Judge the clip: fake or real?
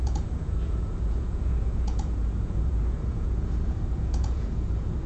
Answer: fake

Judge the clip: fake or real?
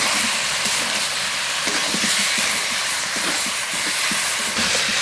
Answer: real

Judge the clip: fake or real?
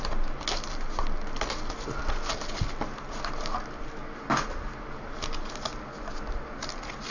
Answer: real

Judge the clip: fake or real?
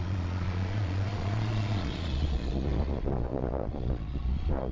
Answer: fake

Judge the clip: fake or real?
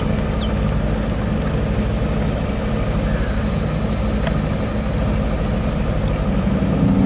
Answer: real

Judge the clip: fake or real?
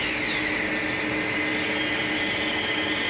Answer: real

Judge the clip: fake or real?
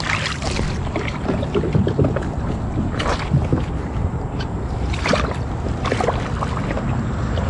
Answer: real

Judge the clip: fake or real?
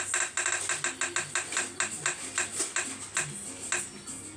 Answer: real